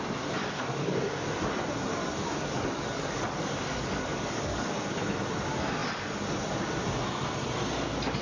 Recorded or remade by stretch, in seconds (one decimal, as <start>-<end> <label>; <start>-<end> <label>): 0.0-0.4 recorded; 0.4-1.1 remade; 1.1-2.2 recorded; 2.2-4.7 remade; 4.7-8.2 recorded